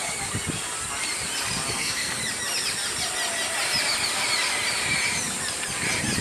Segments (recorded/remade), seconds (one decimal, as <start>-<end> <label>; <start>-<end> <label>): 0.0-1.7 recorded; 1.7-2.2 remade; 2.2-6.2 recorded